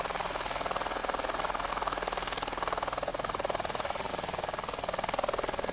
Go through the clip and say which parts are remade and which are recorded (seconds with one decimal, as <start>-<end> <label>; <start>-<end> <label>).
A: 0.0-3.1 recorded; 3.1-4.1 remade; 4.1-5.7 recorded